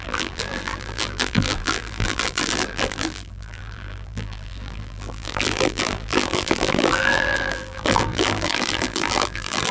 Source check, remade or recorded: remade